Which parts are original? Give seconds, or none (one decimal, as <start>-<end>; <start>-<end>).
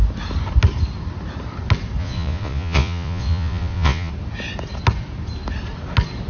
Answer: 0.0-2.0; 4.1-6.3